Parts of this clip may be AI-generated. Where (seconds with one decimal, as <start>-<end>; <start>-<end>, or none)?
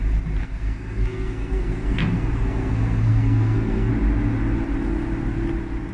0.4-3.9